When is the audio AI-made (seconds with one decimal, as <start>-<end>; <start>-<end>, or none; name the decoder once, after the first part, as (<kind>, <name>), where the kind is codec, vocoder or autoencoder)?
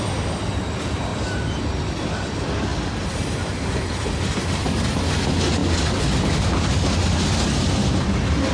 none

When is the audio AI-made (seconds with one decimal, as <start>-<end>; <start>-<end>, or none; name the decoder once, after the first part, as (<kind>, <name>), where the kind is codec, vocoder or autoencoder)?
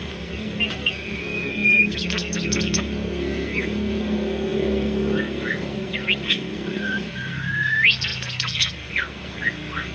0.0-9.9 (codec, SNAC)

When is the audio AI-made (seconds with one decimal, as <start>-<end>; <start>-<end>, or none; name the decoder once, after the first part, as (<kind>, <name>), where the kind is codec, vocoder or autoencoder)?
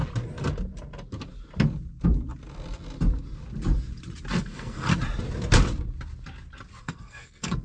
4.4-4.9 (codec, SNAC); 6.8-7.6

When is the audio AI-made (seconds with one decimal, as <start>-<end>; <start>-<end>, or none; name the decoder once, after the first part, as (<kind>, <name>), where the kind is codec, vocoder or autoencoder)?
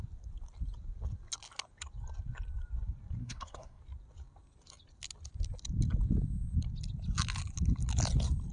3.2-3.8 (codec, SNAC)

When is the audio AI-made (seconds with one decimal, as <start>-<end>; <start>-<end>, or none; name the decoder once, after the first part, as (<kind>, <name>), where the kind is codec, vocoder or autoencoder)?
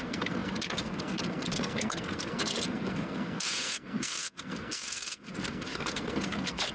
0.0-6.7 (codec, SNAC)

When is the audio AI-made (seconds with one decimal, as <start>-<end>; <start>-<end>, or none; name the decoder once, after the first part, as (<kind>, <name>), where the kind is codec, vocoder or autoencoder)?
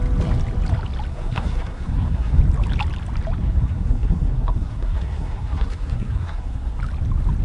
1.1-2.4 (codec, SNAC); 3.4-6.8